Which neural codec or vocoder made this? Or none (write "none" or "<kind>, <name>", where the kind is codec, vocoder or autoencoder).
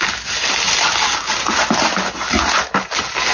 none